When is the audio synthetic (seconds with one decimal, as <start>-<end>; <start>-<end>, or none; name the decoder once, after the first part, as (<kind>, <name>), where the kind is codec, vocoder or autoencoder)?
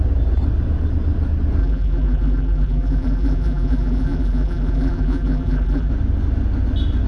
1.6-5.9 (vocoder, BigVGAN v2)